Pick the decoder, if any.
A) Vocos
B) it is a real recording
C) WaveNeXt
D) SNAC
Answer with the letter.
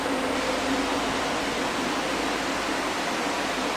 B